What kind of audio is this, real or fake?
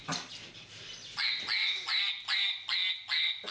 real